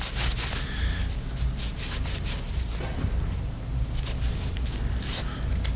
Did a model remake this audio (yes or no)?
no